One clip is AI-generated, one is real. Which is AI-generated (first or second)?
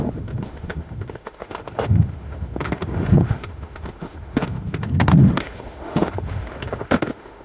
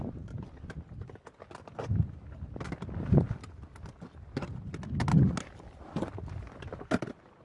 first